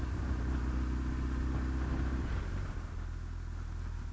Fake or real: real